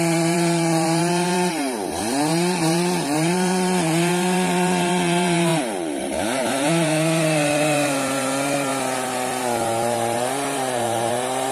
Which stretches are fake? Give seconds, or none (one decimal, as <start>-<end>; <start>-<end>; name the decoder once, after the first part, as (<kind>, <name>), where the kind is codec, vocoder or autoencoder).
0.0-11.5 (vocoder, BigVGAN v2)